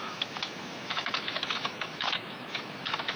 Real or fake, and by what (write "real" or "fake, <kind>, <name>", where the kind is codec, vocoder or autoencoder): fake, autoencoder, DAC-VAE